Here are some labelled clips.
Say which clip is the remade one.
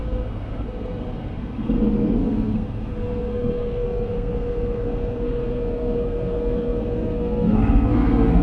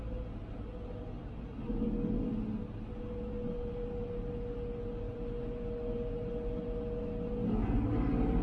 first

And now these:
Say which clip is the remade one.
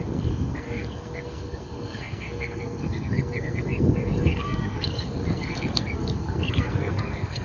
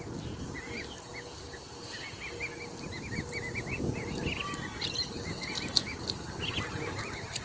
first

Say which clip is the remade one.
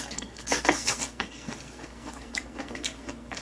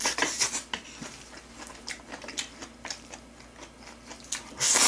first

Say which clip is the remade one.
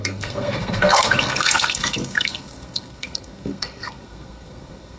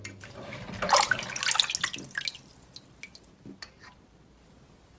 first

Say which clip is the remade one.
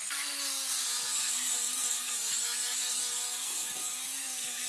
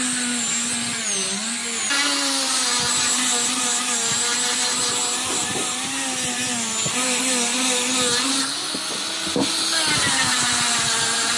first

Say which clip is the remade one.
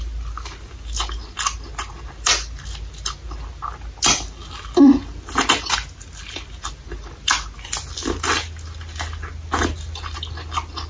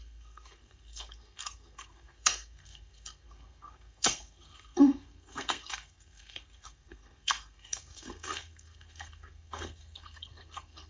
second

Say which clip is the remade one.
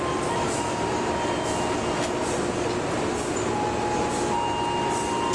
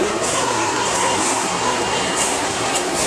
second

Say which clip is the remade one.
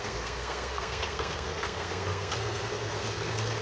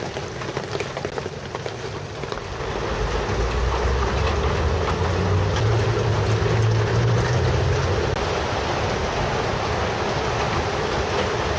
first